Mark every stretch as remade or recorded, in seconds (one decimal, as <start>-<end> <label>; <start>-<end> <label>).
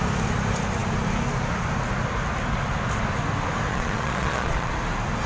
0.0-3.7 recorded; 3.7-4.7 remade; 4.7-5.3 recorded